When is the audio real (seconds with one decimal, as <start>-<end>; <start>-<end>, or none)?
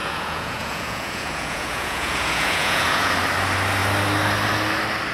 3.1-5.1